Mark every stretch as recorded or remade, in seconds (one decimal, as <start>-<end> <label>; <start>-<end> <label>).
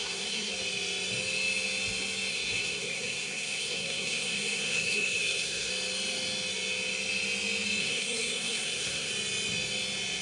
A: 0.0-0.5 remade; 0.5-2.3 recorded; 2.3-5.7 remade; 5.7-7.8 recorded; 7.8-9.1 remade; 9.1-10.2 recorded